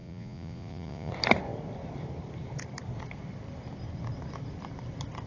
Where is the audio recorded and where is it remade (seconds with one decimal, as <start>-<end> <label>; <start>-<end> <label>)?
0.0-1.1 remade; 1.1-5.3 recorded